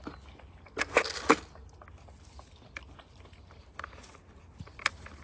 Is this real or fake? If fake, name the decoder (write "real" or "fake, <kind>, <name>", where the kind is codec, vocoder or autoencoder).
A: real